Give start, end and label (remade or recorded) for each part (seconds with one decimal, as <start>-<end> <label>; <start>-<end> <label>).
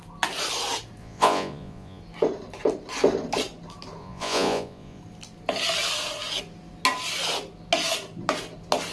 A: 0.0-1.0 recorded; 1.0-2.0 remade; 2.0-4.0 recorded; 4.0-5.0 remade; 5.0-8.9 recorded